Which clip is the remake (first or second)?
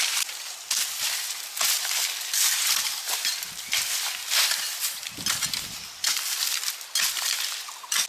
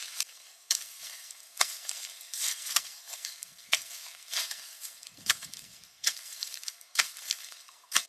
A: second